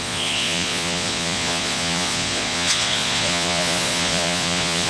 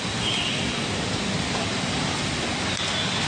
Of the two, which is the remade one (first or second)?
first